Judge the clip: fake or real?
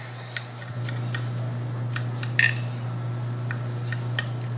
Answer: real